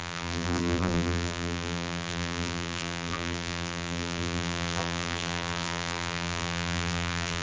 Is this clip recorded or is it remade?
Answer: remade